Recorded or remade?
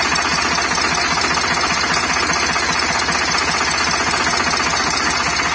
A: recorded